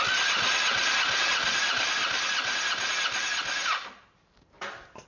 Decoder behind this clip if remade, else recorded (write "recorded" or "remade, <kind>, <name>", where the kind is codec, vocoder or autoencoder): recorded